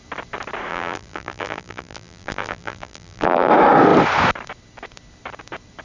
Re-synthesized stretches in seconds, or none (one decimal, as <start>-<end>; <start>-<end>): 0.7-3.5